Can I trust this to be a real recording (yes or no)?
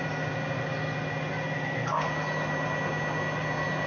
yes